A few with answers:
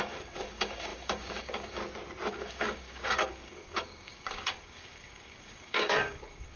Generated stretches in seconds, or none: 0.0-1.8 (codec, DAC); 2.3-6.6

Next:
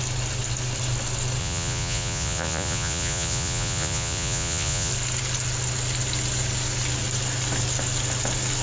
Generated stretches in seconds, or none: 1.4-4.9 (vocoder, Vocos)